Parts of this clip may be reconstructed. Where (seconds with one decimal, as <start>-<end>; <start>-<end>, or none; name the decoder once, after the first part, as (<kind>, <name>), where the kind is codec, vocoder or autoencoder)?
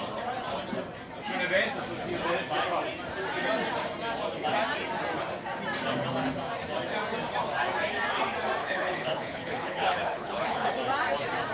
8.6-10.7 (codec, HILCodec)